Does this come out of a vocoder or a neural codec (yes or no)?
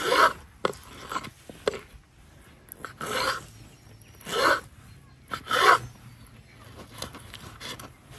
no